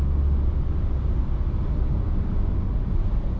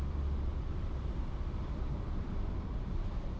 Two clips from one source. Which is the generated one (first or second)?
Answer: second